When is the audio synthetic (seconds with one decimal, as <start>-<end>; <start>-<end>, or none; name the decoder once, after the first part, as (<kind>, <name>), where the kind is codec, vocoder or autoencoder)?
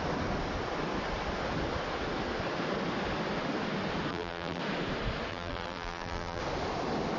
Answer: 4.1-4.6 (vocoder, BigVGAN v2); 5.3-6.4